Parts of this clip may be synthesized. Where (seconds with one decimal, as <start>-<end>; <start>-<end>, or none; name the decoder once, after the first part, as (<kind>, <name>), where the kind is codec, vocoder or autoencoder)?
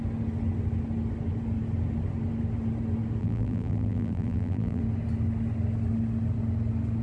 3.2-4.8 (vocoder, BigVGAN v2)